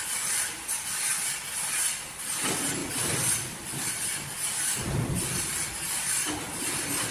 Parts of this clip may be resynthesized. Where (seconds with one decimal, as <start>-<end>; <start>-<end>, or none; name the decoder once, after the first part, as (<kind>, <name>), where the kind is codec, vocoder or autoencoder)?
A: none